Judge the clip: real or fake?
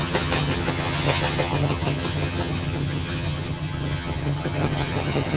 fake